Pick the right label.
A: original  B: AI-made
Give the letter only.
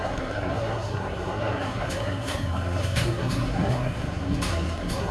B